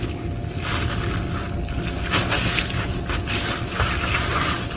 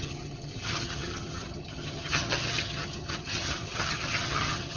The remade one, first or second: second